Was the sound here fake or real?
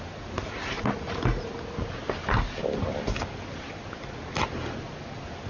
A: real